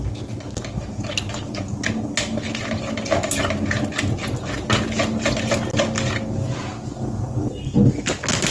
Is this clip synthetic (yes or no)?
no